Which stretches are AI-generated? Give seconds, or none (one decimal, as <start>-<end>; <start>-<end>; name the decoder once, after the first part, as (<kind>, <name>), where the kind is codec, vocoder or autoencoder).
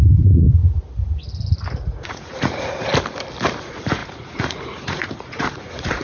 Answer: 0.0-0.6 (vocoder, Vocos); 1.8-2.9; 3.6-6.0